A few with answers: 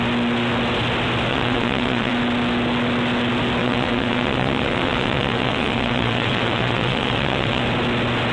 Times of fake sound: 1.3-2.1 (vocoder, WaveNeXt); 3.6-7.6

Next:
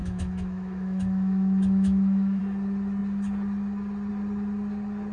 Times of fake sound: 0.0-2.4 (autoencoder, DAC-VAE)

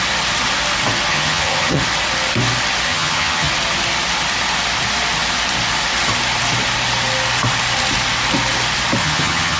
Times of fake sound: 1.1-1.8 (vocoder, HiFi-GAN); 2.9-3.5; 9.0-9.6

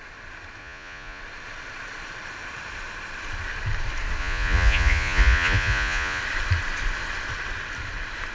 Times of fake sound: 0.6-1.2 (vocoder, Vocos); 4.2-6.2

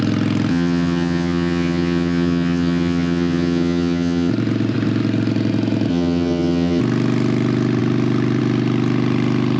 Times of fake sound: 0.5-4.3 (vocoder, HiFi-GAN); 5.9-6.8

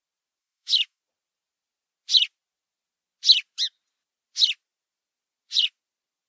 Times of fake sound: 0.4-1.0 (autoencoder, DAC-VAE)

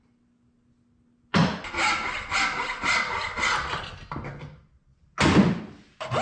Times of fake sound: none

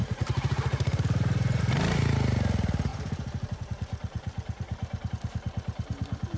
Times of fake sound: 0.0-1.6 (vocoder, BigVGAN v2); 2.9-5.1